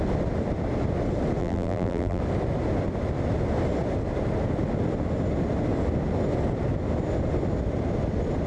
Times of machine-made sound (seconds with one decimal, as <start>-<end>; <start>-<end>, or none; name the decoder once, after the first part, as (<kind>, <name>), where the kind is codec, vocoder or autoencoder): 1.4-2.2 (vocoder, BigVGAN v2)